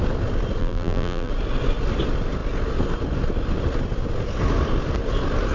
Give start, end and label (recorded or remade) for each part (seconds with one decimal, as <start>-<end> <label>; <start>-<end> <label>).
0.0-0.6 recorded; 0.6-1.3 remade; 1.3-5.5 recorded